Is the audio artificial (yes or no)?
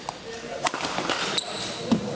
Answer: no